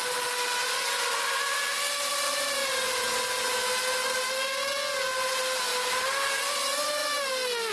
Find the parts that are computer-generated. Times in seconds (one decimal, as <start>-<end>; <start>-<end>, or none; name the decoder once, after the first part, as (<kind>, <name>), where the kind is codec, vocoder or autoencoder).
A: 2.6-3.1 (vocoder, BigVGAN v2)